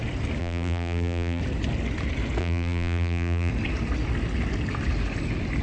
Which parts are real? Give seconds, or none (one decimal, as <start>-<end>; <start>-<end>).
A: 0.0-0.4; 1.4-2.4; 3.5-5.6